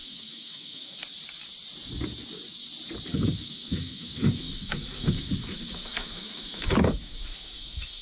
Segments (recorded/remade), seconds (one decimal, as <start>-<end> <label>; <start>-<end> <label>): 0.0-1.0 remade; 1.0-3.1 recorded; 3.1-8.0 remade